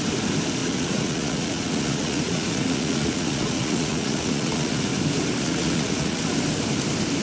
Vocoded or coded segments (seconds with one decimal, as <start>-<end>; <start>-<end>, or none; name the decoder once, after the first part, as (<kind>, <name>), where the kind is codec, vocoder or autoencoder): 0.6-4.9 (vocoder, Vocos); 5.4-6.2